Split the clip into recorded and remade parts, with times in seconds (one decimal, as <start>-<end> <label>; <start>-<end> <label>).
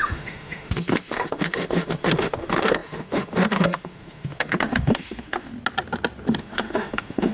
0.0-5.5 remade; 5.5-6.4 recorded; 6.4-7.3 remade